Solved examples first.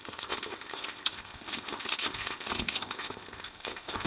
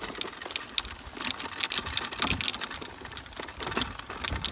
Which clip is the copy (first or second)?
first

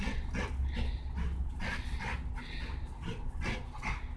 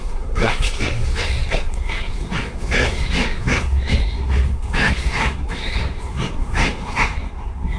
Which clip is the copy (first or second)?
second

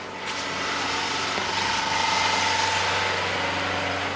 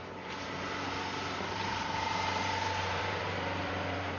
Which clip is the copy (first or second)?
second